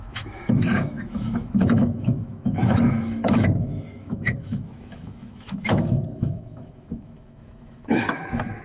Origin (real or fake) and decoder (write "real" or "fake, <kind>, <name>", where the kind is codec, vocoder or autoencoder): fake, autoencoder, DAC-VAE